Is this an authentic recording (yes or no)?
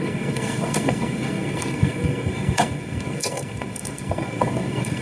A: no